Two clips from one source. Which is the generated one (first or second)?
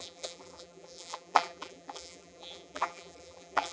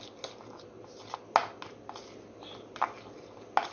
first